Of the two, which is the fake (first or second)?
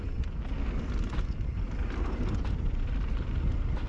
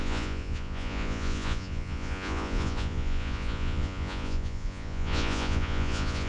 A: second